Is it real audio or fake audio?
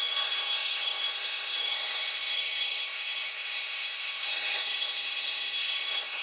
fake